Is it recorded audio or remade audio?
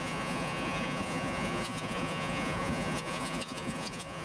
remade